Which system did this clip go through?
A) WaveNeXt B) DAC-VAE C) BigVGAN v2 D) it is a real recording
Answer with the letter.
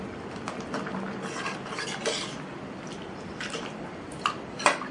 C